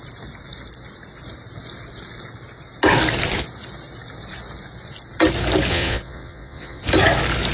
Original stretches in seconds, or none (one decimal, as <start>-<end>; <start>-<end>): 0.0-5.7; 6.8-7.5